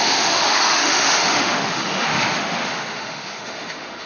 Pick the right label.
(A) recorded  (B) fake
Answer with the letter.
B